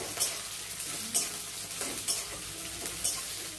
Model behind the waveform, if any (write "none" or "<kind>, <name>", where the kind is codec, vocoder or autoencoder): none